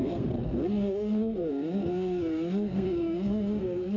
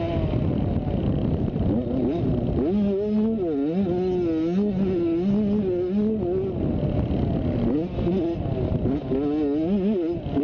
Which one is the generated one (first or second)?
first